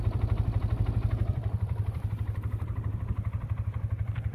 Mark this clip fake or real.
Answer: fake